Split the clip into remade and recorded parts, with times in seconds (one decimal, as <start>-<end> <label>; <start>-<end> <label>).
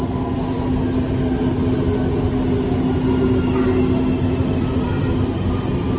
0.0-4.4 recorded; 4.4-6.0 remade